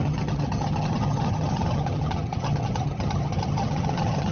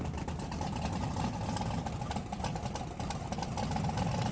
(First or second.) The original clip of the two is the second